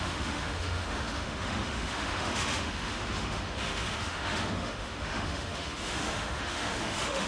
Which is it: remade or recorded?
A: remade